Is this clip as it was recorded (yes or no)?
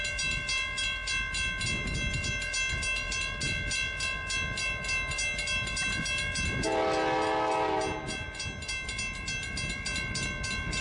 yes